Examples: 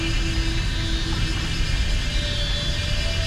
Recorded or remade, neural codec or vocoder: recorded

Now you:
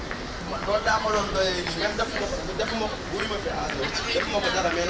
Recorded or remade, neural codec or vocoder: recorded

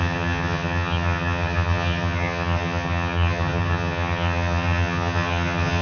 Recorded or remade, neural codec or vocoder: remade, vocoder, HiFi-GAN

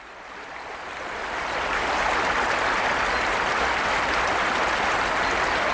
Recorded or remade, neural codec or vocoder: recorded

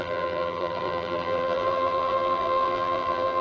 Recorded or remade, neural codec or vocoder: remade, vocoder, BigVGAN v2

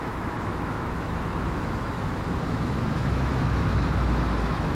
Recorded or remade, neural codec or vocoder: remade, autoencoder, DAC-VAE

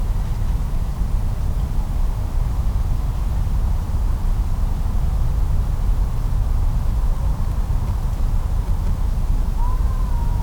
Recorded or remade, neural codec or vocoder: recorded